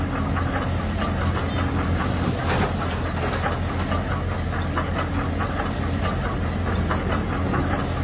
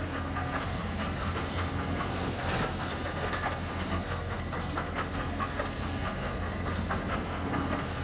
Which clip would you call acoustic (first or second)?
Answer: first